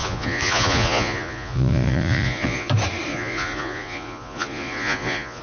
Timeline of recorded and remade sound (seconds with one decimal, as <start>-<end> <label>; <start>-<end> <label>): 0.0-2.7 remade; 2.7-3.1 recorded; 3.1-5.4 remade